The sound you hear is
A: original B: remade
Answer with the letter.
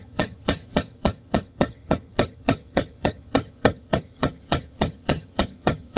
B